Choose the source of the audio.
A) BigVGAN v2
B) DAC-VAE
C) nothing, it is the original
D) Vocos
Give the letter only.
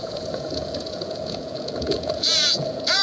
D